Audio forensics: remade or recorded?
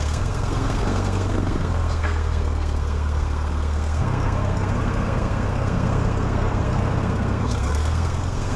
remade